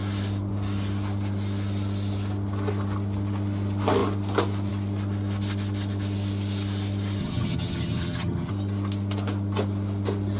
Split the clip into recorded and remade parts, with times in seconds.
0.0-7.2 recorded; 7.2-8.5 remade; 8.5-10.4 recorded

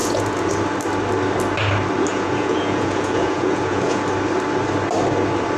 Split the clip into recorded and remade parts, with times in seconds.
0.0-0.5 remade; 0.5-2.1 recorded; 2.1-4.0 remade; 4.0-5.6 recorded

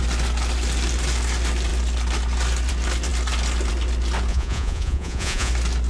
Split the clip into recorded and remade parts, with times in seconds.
0.0-4.3 recorded; 4.3-5.5 remade; 5.5-5.9 recorded

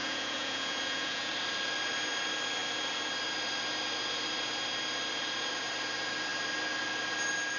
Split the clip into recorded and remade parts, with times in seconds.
0.0-1.3 remade; 1.3-7.6 recorded

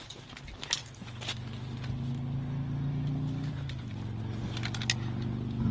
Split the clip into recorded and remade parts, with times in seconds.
0.0-5.7 recorded

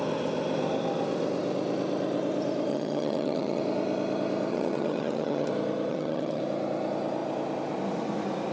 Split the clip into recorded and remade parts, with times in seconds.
0.0-2.7 recorded; 2.7-3.6 remade; 3.6-4.5 recorded; 4.5-5.5 remade; 5.5-5.9 recorded; 5.9-6.4 remade; 6.4-8.5 recorded

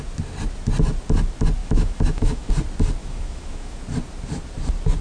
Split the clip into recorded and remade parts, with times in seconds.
0.0-1.6 recorded; 1.6-2.5 remade; 2.5-3.0 recorded; 3.0-3.8 remade; 3.8-5.0 recorded

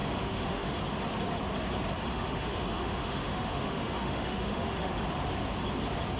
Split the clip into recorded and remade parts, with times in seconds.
0.0-0.8 remade; 0.8-2.1 recorded; 2.1-4.9 remade; 4.9-6.2 recorded